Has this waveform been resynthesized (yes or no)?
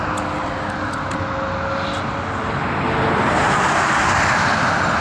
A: no